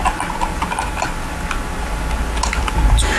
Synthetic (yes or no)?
no